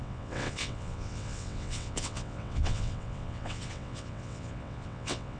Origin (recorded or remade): remade